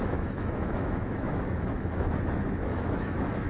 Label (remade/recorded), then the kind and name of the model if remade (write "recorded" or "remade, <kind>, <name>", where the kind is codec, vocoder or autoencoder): remade, autoencoder, DAC-VAE